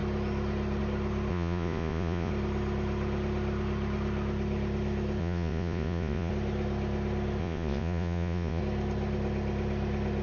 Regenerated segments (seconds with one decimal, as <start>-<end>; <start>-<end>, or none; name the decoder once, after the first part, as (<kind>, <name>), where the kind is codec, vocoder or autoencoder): 1.3-2.3 (vocoder, Vocos); 5.2-6.3; 7.4-8.6